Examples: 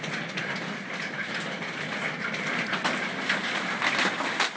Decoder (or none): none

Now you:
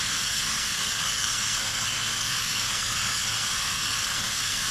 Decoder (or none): codec, SNAC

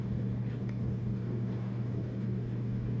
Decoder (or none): codec, DAC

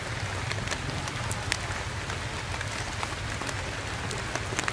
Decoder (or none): none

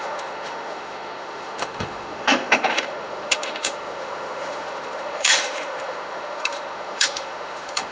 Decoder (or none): autoencoder, DAC-VAE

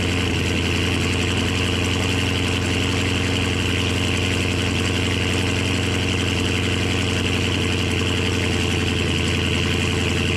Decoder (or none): none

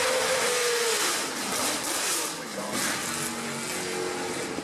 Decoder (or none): none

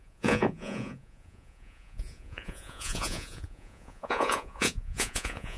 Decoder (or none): vocoder, Vocos